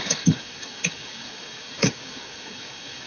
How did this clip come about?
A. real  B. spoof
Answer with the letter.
B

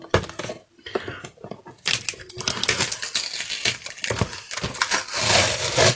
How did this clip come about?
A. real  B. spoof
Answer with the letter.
A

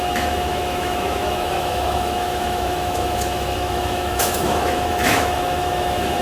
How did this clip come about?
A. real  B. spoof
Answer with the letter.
B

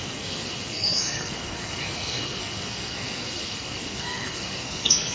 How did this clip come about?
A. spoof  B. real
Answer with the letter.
A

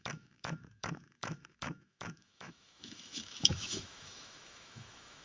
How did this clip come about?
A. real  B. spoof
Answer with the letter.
B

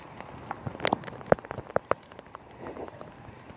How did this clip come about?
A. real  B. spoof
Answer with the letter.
A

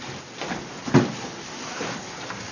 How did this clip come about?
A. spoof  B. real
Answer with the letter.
B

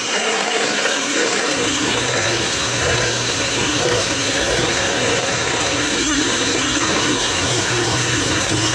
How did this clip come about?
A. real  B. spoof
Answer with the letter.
B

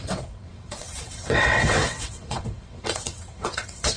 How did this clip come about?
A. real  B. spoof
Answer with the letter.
B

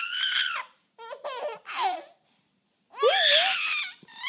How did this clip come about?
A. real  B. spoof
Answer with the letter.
A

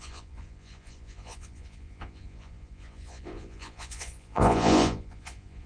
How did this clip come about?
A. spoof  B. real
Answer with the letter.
A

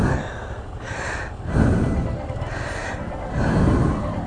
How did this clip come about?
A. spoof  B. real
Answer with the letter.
B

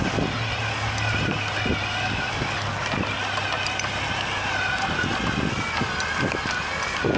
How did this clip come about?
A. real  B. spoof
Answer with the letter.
A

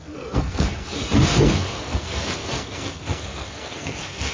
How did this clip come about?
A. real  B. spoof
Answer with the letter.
B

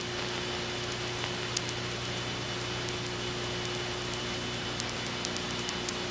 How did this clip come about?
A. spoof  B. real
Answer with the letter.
B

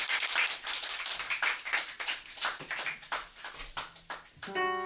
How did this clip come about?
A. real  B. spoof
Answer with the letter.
A